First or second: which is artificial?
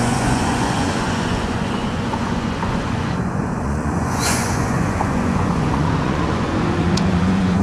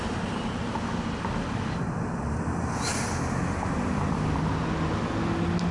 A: first